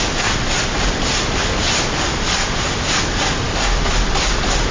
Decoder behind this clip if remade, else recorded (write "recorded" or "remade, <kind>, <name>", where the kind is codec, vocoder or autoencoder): recorded